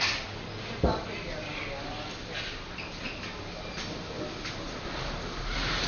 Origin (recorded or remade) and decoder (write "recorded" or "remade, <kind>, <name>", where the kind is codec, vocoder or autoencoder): recorded